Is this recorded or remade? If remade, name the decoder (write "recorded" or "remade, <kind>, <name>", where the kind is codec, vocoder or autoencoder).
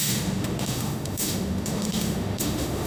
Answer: remade, autoencoder, DAC-VAE